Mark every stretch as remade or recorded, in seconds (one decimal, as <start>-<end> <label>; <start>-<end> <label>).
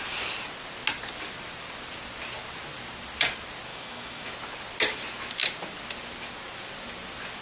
0.0-3.7 recorded; 3.7-4.3 remade; 4.3-7.4 recorded